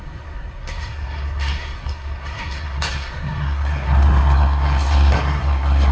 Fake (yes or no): yes